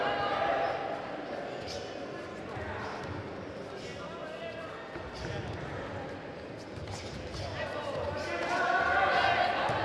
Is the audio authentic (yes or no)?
yes